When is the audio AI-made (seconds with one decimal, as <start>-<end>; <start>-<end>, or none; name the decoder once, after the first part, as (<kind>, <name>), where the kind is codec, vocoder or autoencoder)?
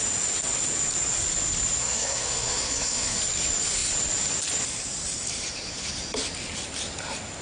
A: 1.8-3.2 (codec, SNAC)